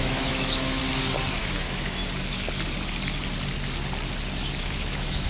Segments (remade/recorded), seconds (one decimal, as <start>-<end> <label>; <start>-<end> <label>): 0.0-0.8 remade; 0.8-1.4 recorded; 1.4-2.0 remade; 2.0-4.6 recorded; 4.6-5.3 remade